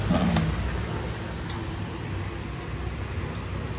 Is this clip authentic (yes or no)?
yes